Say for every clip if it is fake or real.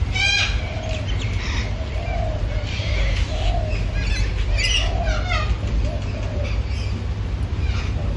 real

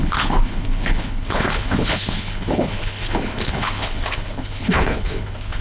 fake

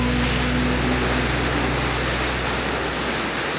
real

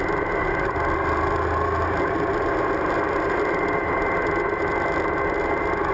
real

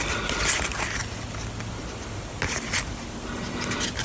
real